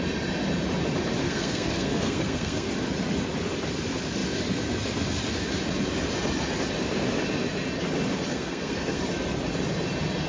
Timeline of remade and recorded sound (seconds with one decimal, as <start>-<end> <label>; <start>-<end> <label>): 0.0-1.2 recorded; 1.2-2.7 remade; 2.7-8.3 recorded; 8.3-9.0 remade; 9.0-10.3 recorded